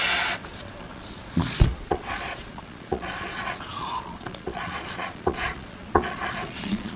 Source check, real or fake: fake